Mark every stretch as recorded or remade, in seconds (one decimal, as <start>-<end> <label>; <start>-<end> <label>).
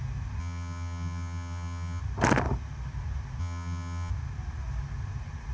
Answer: 0.0-0.4 recorded; 0.4-2.0 remade; 2.0-3.4 recorded; 3.4-4.1 remade; 4.1-5.5 recorded